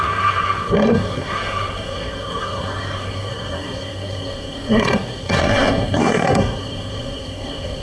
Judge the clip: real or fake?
fake